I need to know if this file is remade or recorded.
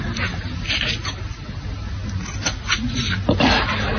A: recorded